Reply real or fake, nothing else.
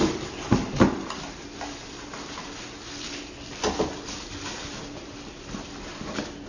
real